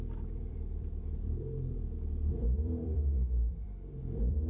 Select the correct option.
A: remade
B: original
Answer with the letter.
A